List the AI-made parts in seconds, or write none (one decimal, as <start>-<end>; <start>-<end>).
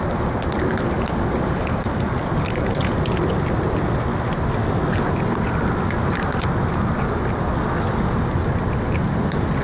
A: none